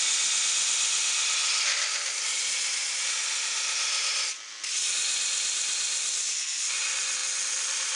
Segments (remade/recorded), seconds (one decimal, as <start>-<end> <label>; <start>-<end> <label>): 0.0-8.0 recorded